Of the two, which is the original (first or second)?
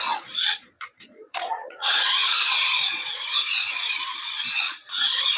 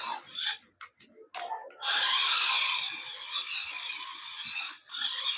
second